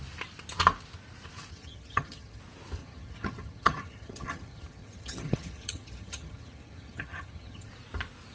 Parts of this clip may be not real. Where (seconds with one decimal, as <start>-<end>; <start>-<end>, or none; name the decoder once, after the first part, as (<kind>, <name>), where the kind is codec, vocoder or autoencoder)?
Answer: 1.5-2.4 (vocoder, HiFi-GAN); 2.8-7.7